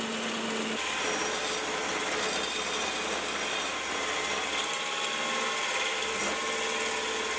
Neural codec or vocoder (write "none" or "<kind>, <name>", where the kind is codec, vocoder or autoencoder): none